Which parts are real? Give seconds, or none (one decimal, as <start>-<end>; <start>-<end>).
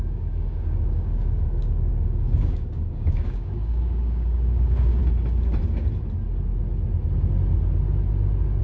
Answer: 5.0-8.6